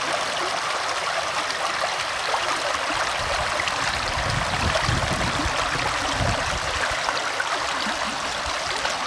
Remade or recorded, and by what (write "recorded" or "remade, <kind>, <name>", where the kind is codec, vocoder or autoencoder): recorded